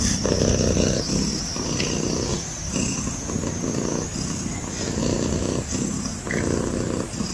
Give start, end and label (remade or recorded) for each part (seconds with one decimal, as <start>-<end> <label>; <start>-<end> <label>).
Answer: 0.0-7.3 recorded